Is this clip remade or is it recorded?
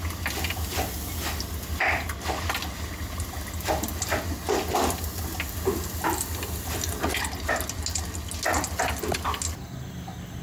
recorded